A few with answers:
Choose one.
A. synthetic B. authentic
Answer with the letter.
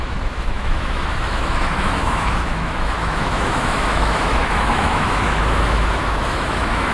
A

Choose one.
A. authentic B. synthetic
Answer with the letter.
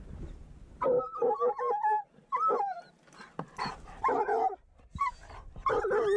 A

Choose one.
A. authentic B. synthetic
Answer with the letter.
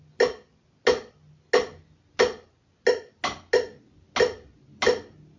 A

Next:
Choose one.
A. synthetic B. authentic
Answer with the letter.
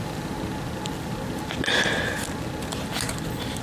B